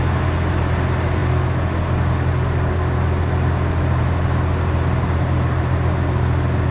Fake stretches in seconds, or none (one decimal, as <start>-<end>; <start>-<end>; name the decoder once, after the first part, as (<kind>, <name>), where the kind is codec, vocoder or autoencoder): none